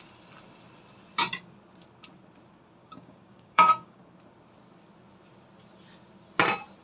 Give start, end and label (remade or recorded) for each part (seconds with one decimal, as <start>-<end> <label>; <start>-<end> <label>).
0.0-2.8 recorded; 2.8-4.0 remade; 4.0-6.8 recorded